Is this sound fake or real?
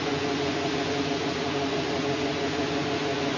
fake